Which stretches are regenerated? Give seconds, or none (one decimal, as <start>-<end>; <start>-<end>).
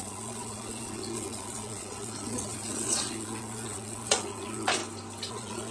0.0-4.8; 5.3-5.7